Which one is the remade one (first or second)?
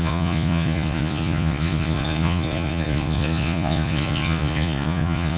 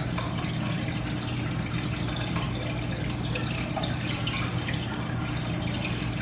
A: first